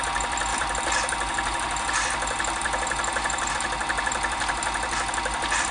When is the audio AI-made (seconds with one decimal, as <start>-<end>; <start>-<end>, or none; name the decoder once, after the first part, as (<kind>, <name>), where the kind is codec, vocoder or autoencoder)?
none